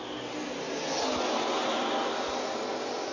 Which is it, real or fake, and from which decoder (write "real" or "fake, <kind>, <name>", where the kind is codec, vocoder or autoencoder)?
real